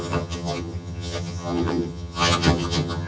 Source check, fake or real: fake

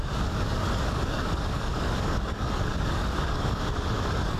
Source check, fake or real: fake